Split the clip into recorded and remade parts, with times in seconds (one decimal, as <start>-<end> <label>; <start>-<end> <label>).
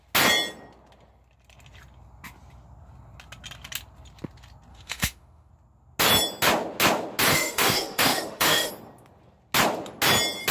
0.0-4.7 recorded; 4.7-5.5 remade; 5.5-7.3 recorded; 7.3-8.7 remade; 8.7-10.5 recorded